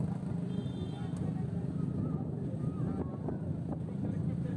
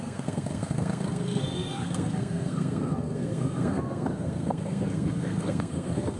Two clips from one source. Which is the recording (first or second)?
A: first